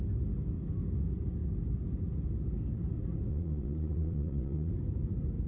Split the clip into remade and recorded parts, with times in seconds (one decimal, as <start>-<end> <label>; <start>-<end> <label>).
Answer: 0.0-3.3 recorded; 3.3-4.7 remade; 4.7-5.5 recorded